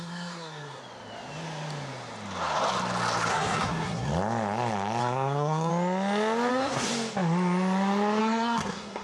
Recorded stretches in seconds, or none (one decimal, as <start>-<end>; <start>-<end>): 0.8-3.3; 4.1-5.0; 5.7-6.5; 6.9-8.2